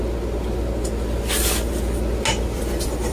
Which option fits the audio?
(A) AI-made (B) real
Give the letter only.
B